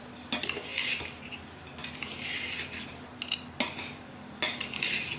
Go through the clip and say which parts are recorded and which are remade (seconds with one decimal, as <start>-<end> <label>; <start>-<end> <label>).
0.0-1.8 recorded; 1.8-5.2 remade